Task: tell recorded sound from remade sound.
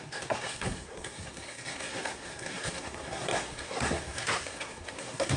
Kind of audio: remade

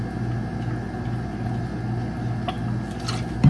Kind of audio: recorded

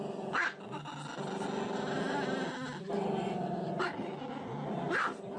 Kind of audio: recorded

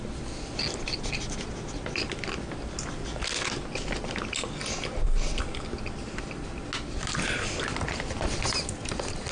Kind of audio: recorded